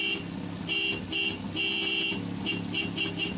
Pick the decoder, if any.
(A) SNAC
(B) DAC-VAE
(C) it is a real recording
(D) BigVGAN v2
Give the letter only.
C